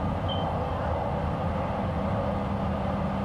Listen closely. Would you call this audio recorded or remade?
recorded